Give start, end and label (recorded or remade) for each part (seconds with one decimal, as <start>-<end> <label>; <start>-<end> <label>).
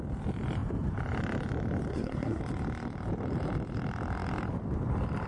0.0-1.9 recorded; 1.9-2.4 remade; 2.4-5.3 recorded